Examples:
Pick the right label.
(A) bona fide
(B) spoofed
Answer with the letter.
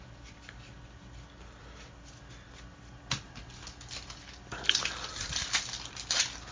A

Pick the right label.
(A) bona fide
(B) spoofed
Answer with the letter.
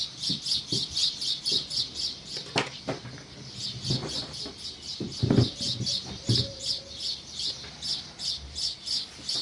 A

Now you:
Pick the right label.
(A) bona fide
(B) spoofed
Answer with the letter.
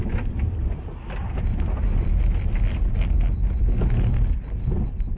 A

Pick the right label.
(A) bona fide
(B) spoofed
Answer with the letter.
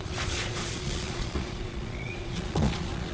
B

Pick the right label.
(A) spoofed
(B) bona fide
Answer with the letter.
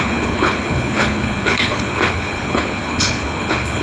A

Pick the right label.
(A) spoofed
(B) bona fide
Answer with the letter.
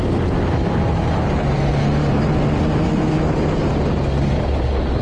B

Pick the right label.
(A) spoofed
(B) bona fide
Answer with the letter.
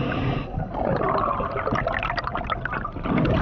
B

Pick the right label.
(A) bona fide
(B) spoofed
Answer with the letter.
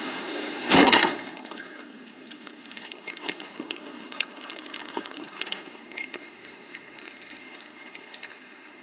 B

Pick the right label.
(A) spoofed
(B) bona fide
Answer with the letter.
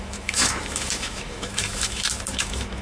A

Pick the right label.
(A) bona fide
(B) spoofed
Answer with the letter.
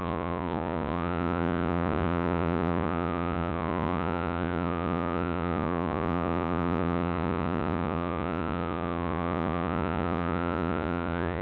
B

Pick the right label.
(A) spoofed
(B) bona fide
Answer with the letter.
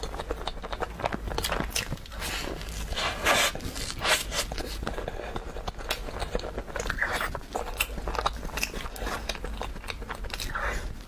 B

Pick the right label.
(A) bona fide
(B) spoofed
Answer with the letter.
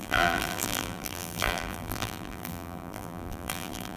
B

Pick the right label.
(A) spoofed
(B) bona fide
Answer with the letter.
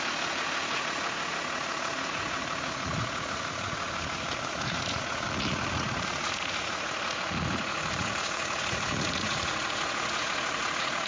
A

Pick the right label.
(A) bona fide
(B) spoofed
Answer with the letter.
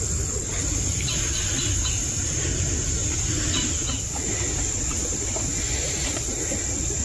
A